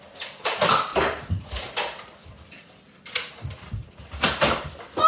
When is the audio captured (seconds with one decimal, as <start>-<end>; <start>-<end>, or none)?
0.0-5.1